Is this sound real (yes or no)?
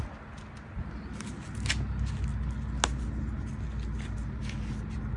yes